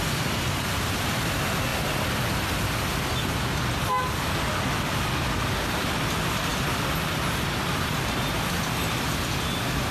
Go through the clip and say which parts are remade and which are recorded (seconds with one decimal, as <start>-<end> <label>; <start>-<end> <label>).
0.0-9.9 recorded